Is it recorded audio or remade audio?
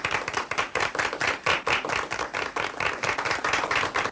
recorded